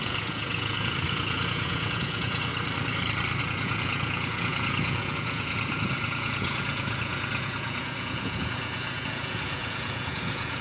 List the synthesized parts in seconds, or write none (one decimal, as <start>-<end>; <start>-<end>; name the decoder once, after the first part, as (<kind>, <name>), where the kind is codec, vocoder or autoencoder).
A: 0.0-2.5 (vocoder, Vocos); 3.4-10.6